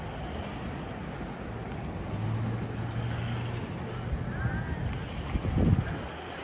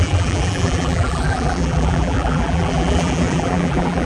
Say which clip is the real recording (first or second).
first